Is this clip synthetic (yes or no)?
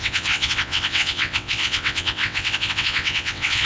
yes